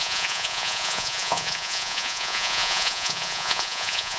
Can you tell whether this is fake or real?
fake